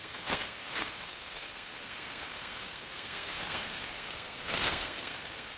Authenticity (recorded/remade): remade